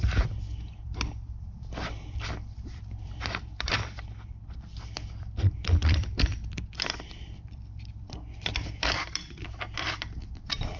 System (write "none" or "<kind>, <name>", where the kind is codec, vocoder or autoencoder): vocoder, BigVGAN v2